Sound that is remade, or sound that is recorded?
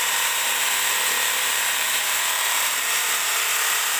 remade